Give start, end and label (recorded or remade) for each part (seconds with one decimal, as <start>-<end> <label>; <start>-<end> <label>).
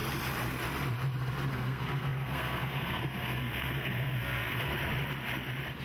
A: 0.0-1.5 recorded; 1.5-4.7 remade; 4.7-5.8 recorded